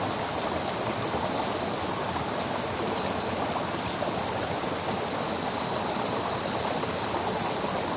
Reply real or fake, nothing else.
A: real